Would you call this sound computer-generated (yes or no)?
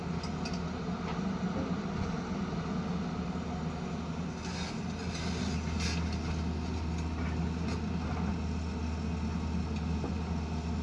no